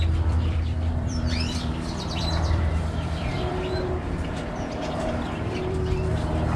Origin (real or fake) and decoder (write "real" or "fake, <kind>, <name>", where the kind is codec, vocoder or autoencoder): fake, vocoder, BigVGAN v2